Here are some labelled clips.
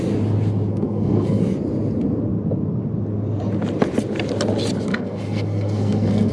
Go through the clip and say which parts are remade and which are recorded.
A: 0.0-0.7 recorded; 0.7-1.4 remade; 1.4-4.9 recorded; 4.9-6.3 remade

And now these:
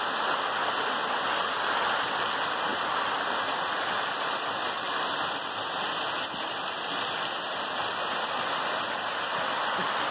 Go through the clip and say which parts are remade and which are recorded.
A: 0.0-10.1 recorded

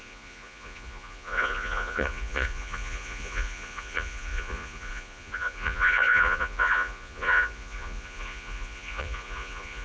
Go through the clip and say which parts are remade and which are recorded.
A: 0.0-9.8 remade

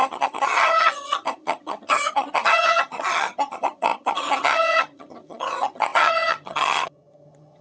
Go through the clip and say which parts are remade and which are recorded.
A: 0.0-7.6 remade

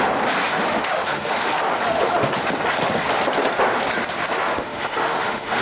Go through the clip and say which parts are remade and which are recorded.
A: 0.0-0.4 recorded; 0.4-1.7 remade; 1.7-4.3 recorded; 4.3-5.6 remade

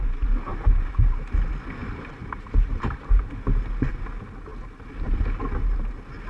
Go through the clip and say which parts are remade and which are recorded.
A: 0.0-2.2 recorded; 2.2-3.3 remade; 3.3-6.3 recorded